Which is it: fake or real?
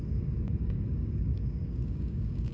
fake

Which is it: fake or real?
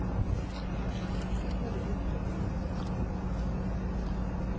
real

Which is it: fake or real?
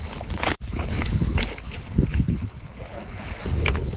fake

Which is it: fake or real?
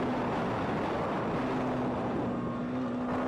real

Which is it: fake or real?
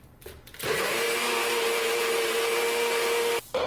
real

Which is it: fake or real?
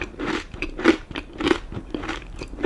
fake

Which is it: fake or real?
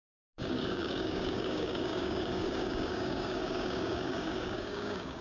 fake